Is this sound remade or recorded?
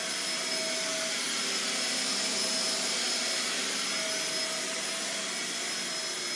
recorded